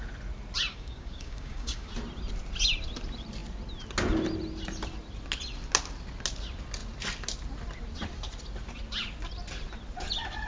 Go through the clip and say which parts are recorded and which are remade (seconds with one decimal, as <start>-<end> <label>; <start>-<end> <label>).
0.0-0.7 recorded; 0.7-1.9 remade; 1.9-10.5 recorded